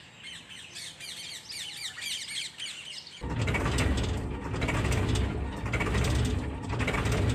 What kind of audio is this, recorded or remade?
recorded